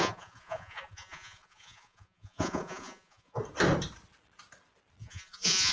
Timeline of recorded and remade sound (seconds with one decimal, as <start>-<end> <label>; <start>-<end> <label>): 0.0-3.4 remade; 3.4-5.0 recorded; 5.0-5.7 remade